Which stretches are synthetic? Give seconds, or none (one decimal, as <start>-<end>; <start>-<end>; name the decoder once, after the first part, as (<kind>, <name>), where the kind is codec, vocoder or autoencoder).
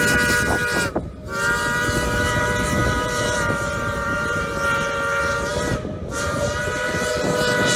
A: 2.8-4.5 (vocoder, BigVGAN v2)